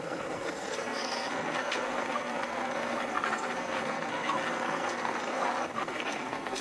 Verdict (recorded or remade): remade